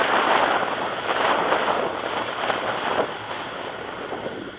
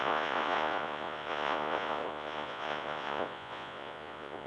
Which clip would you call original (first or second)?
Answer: first